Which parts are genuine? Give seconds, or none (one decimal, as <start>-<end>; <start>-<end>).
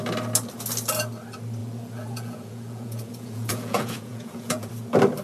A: 0.0-1.6; 4.7-5.2